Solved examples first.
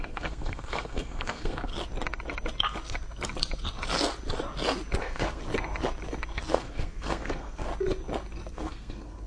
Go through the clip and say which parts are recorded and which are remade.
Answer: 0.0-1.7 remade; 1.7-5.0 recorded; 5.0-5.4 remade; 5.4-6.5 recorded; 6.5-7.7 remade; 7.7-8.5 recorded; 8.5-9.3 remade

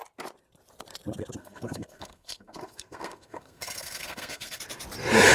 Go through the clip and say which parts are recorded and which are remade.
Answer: 0.0-1.4 recorded; 1.4-4.6 remade; 4.6-5.3 recorded